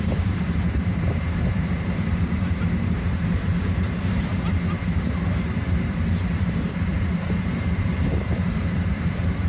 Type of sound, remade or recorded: remade